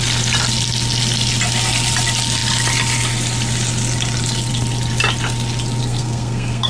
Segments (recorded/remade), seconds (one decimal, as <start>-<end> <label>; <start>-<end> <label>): 0.0-5.8 recorded; 5.8-6.7 remade